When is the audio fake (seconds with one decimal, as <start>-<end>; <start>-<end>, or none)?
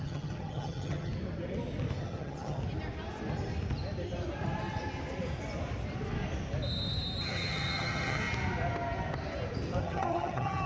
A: 0.0-1.1; 2.0-2.6; 7.2-8.2; 9.8-10.7